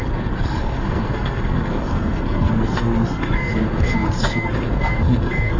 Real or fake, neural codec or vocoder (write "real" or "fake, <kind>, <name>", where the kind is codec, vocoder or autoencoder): fake, codec, SNAC